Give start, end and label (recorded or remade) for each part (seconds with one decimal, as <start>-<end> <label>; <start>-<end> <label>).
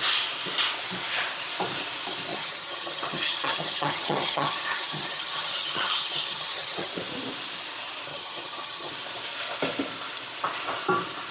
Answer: 0.0-2.3 recorded; 2.3-6.9 remade; 6.9-8.1 recorded; 8.1-8.9 remade; 8.9-11.3 recorded